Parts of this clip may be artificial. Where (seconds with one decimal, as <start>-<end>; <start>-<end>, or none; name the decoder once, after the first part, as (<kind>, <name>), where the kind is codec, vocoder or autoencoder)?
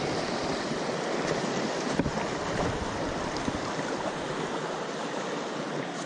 0.0-2.1 (vocoder, BigVGAN v2)